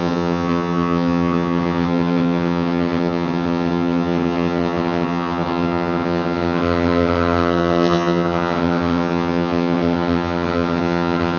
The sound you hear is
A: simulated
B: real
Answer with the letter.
A